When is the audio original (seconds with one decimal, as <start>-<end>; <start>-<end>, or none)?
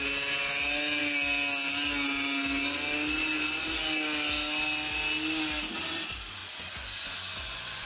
0.0-6.4